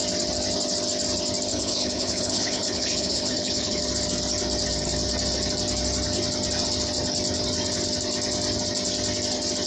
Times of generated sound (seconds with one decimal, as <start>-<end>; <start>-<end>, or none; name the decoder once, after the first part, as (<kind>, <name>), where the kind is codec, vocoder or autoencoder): 1.5-3.8 (codec, HILCodec)